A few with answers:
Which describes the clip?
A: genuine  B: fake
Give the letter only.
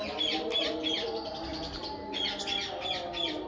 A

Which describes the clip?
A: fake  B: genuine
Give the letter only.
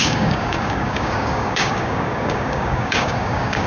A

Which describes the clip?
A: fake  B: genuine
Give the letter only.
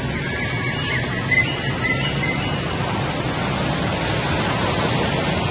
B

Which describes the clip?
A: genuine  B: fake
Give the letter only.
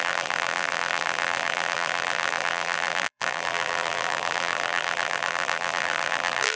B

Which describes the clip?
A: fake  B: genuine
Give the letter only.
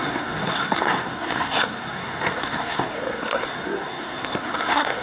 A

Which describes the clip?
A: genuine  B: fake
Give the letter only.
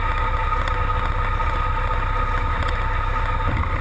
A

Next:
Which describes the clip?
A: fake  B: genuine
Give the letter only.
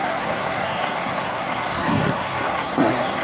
A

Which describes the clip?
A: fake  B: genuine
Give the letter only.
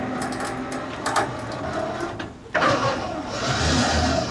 B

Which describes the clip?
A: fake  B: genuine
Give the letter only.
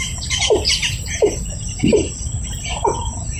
B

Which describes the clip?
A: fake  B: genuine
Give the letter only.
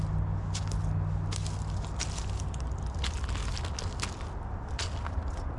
B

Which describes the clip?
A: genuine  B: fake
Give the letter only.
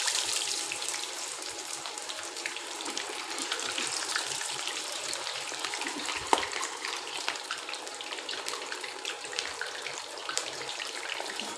B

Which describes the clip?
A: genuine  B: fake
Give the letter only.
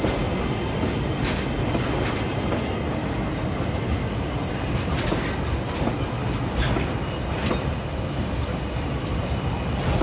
A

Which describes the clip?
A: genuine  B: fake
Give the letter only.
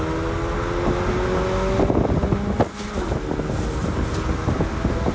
A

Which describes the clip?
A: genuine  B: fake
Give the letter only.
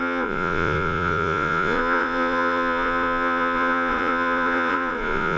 B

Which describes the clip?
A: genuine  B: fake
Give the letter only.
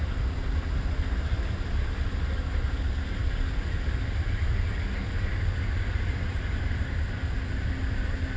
A